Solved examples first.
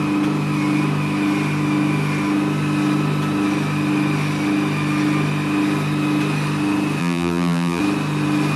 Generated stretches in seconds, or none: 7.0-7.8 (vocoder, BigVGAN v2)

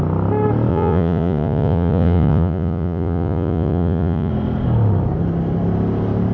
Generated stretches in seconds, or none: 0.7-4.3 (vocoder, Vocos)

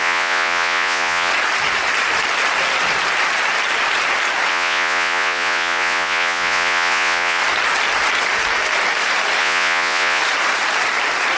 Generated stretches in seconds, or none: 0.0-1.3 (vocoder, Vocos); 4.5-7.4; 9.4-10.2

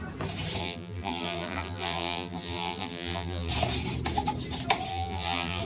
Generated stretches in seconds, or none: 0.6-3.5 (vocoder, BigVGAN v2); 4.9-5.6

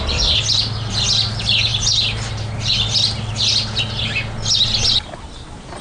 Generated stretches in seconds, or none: none